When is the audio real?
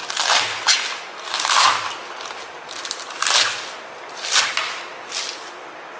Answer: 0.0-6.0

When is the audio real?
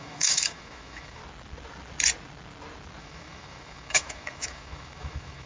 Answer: 1.2-3.0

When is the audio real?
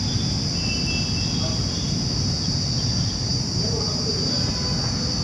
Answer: 0.0-5.2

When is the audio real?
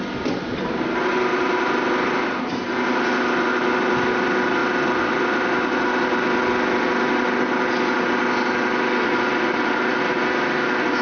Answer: 0.0-11.0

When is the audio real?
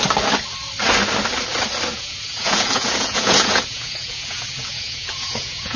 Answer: 0.0-1.9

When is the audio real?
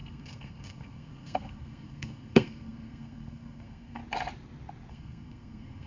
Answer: 4.0-4.9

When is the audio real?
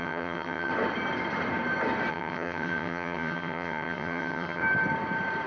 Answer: 0.7-2.1; 4.6-5.5